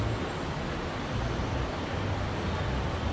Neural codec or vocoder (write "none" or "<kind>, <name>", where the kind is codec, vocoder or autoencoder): none